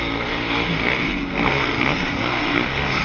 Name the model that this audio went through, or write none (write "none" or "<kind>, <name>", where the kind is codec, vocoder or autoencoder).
codec, SNAC